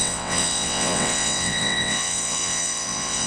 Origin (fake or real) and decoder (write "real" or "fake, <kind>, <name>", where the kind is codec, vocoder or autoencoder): fake, vocoder, WaveNeXt